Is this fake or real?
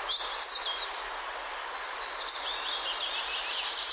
real